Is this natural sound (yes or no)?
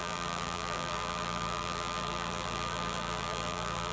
no